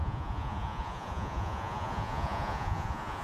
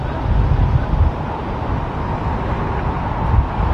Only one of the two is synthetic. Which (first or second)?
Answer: first